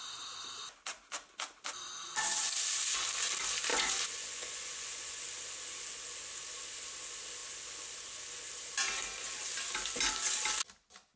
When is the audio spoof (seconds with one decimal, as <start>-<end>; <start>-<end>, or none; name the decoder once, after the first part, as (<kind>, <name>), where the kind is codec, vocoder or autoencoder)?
3.7-5.2 (vocoder, Vocos)